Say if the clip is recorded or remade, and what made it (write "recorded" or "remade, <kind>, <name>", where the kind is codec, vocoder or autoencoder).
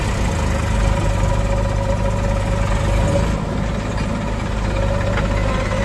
recorded